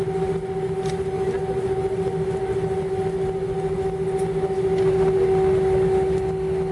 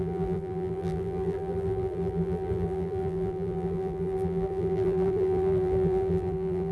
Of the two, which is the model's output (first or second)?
second